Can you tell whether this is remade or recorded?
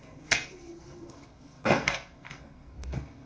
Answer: remade